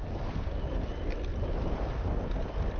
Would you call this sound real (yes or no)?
yes